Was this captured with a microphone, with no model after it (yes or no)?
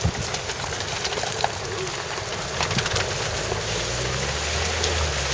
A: yes